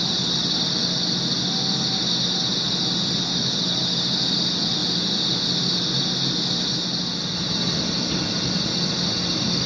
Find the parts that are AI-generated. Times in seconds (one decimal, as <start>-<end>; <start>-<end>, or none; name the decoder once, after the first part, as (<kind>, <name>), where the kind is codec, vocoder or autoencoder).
none